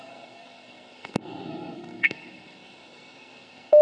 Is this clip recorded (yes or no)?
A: no